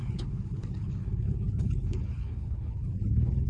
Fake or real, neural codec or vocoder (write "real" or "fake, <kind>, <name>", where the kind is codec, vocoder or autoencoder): fake, codec, HILCodec